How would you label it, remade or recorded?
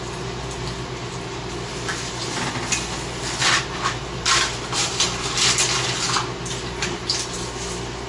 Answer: recorded